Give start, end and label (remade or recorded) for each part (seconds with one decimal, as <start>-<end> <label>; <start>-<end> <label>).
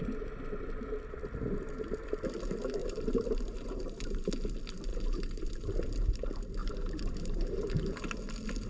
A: 0.0-2.8 recorded; 2.8-4.3 remade; 4.3-4.9 recorded; 4.9-5.5 remade; 5.5-6.6 recorded; 6.6-7.7 remade; 7.7-8.7 recorded